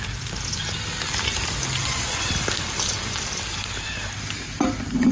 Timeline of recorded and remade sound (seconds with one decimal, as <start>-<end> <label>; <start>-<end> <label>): 0.0-1.8 recorded; 1.8-2.3 remade; 2.3-5.1 recorded